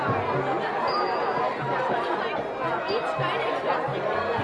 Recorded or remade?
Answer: recorded